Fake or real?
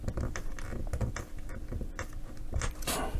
real